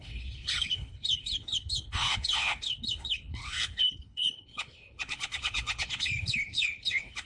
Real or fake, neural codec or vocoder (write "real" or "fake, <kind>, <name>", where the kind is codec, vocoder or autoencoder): fake, codec, HILCodec